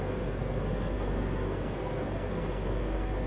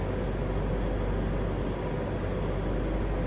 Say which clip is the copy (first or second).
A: first